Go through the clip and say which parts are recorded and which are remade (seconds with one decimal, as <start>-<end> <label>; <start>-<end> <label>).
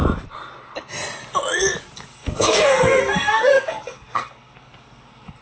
0.0-2.1 recorded; 2.1-5.4 remade